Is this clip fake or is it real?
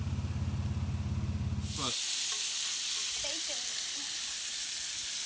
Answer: real